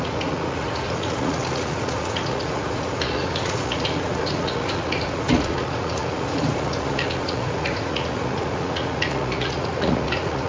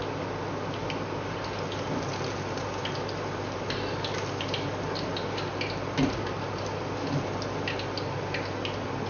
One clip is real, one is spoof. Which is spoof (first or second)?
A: first